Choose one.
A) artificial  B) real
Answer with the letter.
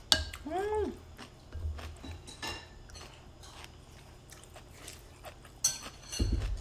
B